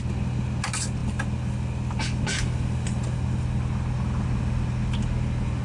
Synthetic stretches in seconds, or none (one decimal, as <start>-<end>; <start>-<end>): none